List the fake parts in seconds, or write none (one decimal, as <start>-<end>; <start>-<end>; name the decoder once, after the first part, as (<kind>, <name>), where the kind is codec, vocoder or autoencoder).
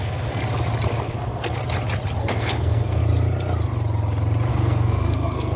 0.0-0.4 (codec, SNAC); 1.0-1.6; 2.2-3.0; 4.5-5.6